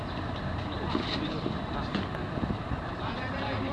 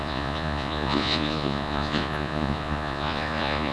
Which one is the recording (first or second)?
first